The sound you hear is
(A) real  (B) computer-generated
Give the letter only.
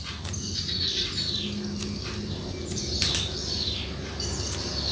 A